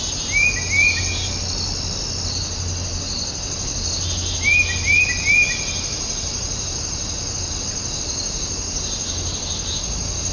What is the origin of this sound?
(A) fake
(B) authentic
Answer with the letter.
B